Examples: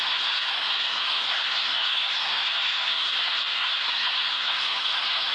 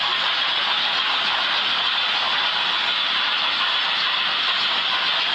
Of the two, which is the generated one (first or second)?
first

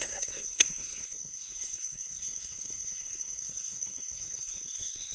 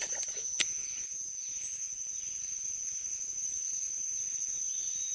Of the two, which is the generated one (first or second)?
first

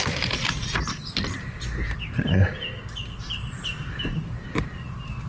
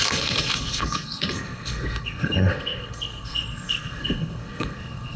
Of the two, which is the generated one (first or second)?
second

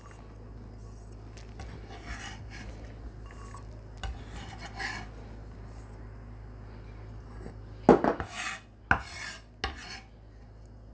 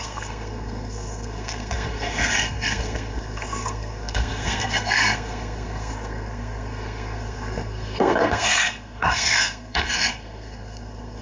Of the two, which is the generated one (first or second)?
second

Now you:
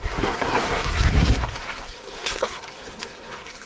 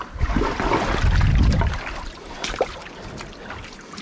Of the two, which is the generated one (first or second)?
first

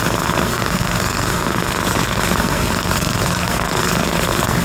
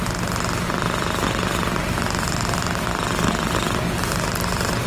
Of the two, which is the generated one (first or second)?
first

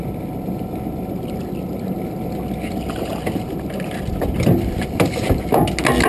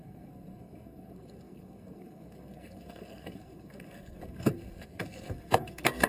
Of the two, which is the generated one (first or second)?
second